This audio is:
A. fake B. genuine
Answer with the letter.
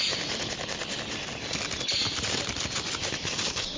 B